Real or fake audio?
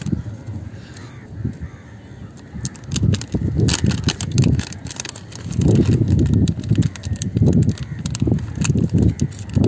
real